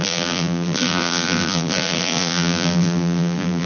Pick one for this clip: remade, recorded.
remade